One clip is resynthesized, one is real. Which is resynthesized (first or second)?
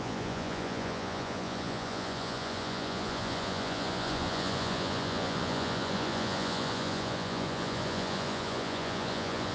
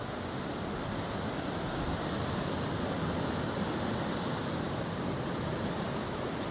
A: first